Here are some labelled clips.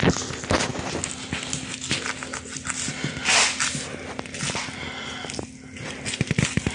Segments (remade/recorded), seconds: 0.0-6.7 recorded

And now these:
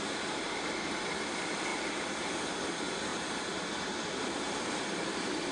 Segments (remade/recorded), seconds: 0.0-1.7 remade; 1.7-2.6 recorded; 2.6-5.5 remade

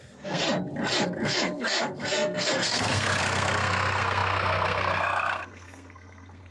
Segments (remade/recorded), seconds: 0.0-0.4 remade; 0.4-1.0 recorded; 1.0-6.5 remade

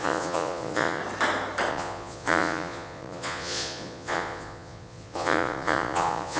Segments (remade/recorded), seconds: 0.0-1.0 remade; 1.0-1.7 recorded; 1.7-6.4 remade

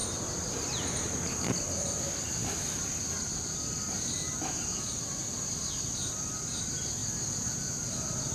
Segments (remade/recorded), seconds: 0.0-8.3 recorded

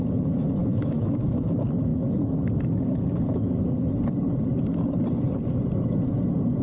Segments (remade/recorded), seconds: 0.0-0.6 recorded; 0.6-1.5 remade; 1.5-6.6 recorded